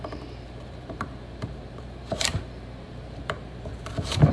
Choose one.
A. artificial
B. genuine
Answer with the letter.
A